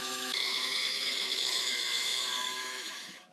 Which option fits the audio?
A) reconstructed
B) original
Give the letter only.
A